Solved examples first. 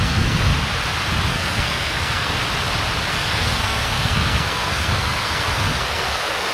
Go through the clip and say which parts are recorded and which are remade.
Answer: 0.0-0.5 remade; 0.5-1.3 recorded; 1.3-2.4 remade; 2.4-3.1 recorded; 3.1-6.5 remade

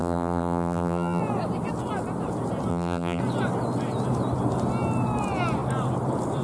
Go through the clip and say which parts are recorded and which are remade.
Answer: 0.0-1.2 remade; 1.2-2.7 recorded; 2.7-3.2 remade; 3.2-6.4 recorded